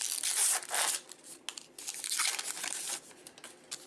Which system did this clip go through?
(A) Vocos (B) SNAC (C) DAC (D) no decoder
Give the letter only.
D